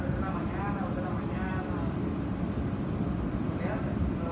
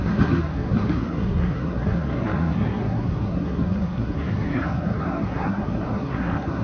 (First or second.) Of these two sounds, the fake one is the second